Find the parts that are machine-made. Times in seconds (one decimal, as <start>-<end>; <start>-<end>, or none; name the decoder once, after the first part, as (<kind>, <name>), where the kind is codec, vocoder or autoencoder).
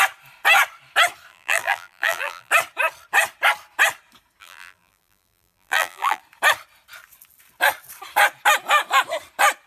1.3-2.5 (vocoder, BigVGAN v2); 4.4-6.2